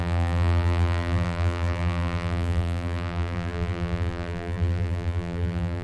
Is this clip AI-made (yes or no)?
yes